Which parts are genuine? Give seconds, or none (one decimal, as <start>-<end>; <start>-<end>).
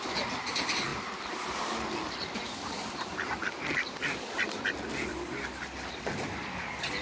none